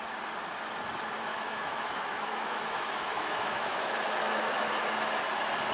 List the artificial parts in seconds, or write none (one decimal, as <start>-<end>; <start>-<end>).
1.3-4.7